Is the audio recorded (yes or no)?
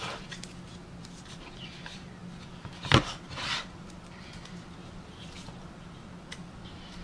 no